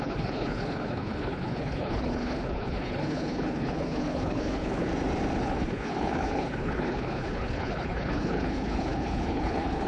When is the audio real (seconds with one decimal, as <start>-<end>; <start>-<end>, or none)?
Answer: 4.9-5.4